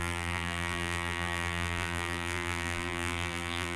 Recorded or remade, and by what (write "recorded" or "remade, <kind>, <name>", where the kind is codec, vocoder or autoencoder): remade, vocoder, BigVGAN v2